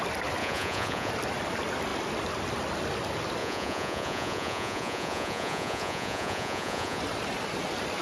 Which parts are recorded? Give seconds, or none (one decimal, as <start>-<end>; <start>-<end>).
0.0-0.4; 1.1-3.4; 7.0-8.0